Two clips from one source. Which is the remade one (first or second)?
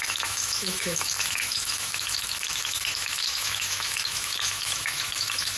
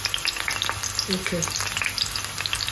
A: first